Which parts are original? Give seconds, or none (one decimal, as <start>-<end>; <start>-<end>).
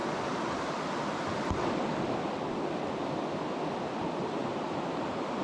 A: 0.0-4.4